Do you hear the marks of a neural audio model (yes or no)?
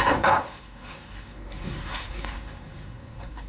yes